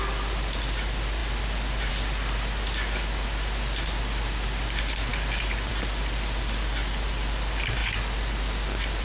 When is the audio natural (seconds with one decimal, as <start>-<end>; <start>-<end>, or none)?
0.0-9.0